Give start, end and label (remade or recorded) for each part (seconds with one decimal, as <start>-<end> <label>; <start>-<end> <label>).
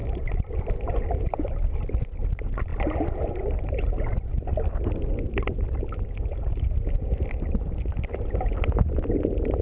0.0-9.6 recorded